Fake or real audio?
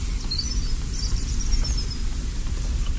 real